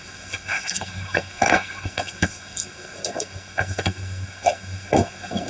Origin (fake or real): fake